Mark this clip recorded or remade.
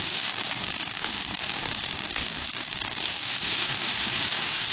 remade